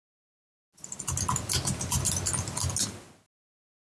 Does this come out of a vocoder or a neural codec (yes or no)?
no